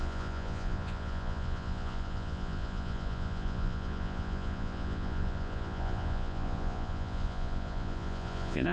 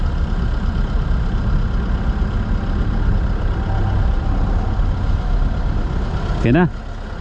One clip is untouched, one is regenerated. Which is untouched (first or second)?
second